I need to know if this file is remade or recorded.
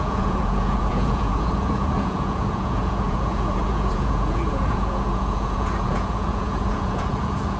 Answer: remade